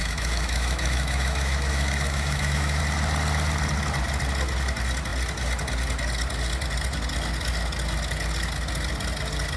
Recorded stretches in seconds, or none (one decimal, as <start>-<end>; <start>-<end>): 2.8-9.6